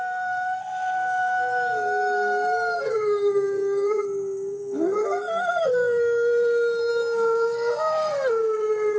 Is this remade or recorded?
remade